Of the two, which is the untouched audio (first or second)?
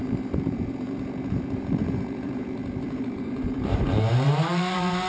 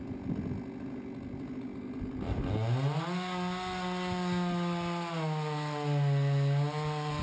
second